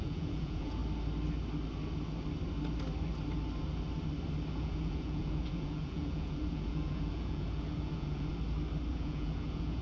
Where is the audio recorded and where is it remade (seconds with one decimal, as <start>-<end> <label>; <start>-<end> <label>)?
0.0-0.8 remade; 0.8-4.5 recorded; 4.5-8.3 remade; 8.3-8.9 recorded; 8.9-9.8 remade

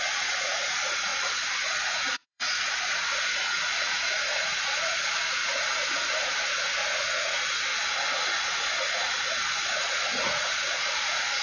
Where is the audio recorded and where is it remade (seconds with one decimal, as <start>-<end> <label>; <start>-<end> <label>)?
0.0-1.1 remade; 1.1-1.8 recorded; 1.8-7.7 remade; 7.7-8.4 recorded; 8.4-11.4 remade

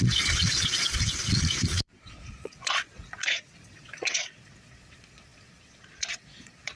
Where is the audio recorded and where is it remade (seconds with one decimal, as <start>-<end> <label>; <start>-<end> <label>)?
0.0-6.8 remade

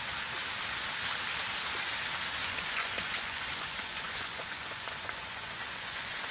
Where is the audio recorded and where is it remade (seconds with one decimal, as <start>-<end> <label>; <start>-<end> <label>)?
0.0-2.4 recorded; 2.4-6.3 remade

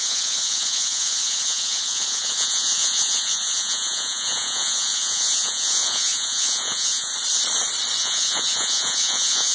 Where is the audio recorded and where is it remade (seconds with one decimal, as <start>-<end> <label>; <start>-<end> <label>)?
0.0-7.1 remade; 7.1-8.0 recorded; 8.0-9.5 remade

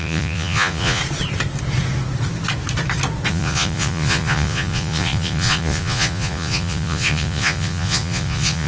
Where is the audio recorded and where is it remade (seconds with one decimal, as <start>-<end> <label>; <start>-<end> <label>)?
0.0-1.0 remade; 1.0-3.3 recorded; 3.3-8.7 remade

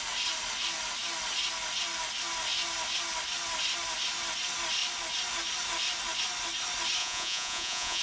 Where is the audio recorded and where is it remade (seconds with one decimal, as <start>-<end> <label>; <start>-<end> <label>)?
0.0-7.0 recorded; 7.0-8.0 remade